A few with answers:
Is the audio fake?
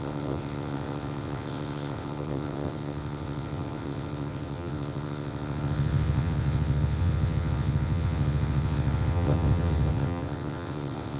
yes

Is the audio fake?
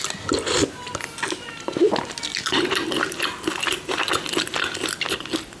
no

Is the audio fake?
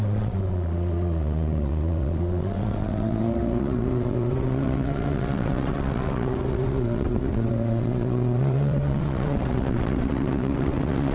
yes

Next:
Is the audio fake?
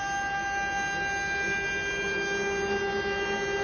no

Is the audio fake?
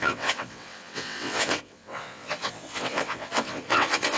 yes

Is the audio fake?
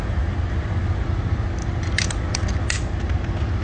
no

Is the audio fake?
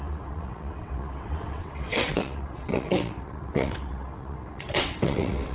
yes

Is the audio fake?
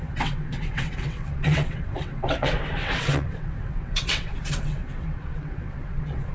yes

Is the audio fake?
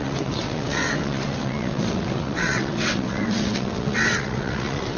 yes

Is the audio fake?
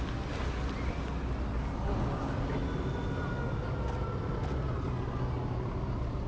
no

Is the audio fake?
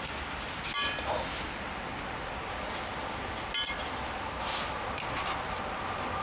no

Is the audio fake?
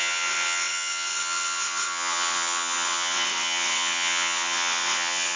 yes